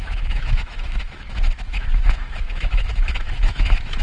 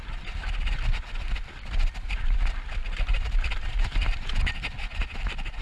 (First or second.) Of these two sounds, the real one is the second